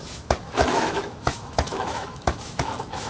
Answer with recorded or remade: remade